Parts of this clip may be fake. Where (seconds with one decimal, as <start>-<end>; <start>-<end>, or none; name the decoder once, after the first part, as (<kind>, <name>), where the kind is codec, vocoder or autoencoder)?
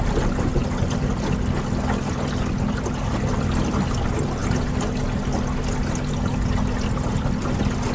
none